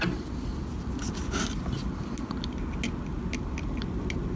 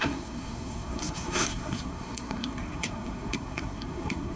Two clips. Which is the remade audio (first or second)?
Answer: second